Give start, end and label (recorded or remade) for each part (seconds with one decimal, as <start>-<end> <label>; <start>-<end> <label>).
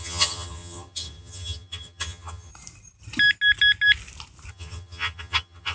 0.0-2.5 remade; 2.5-4.5 recorded; 4.5-5.7 remade